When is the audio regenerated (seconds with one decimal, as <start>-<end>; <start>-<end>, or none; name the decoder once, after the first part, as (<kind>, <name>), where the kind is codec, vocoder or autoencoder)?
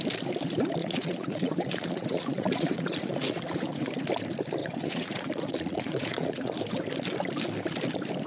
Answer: 0.8-3.9 (vocoder, Vocos); 4.6-6.6